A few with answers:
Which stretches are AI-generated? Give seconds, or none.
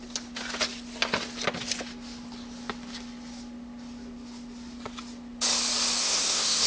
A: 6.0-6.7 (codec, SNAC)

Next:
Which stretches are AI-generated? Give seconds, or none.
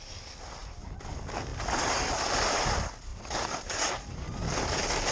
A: none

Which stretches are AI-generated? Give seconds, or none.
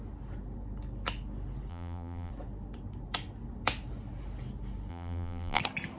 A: 1.7-2.3 (vocoder, BigVGAN v2); 4.9-5.6